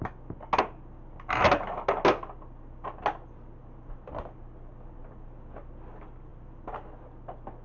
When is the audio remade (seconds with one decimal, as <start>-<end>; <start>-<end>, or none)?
none